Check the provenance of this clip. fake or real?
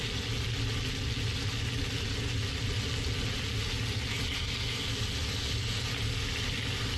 real